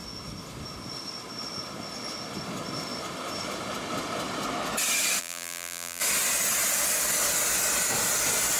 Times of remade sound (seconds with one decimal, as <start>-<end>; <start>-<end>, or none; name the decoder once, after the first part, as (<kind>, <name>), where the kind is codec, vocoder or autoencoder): 5.2-6.0 (vocoder, BigVGAN v2)